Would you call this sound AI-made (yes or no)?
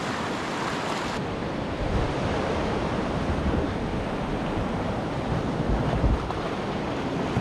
yes